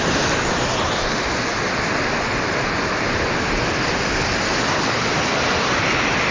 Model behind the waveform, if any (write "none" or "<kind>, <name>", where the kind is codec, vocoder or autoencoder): none